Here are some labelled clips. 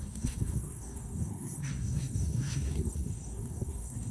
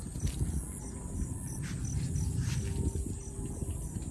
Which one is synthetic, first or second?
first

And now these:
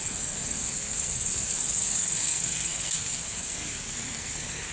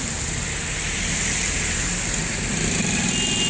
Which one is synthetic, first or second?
first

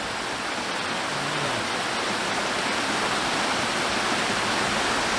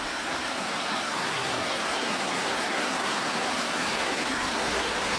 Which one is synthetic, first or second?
second